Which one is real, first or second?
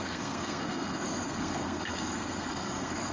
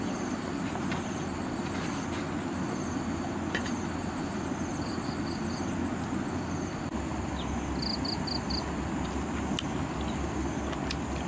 second